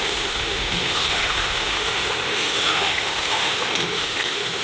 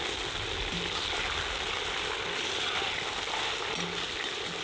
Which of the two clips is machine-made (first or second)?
first